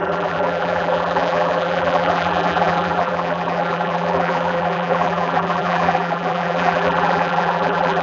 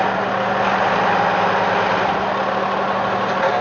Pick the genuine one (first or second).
second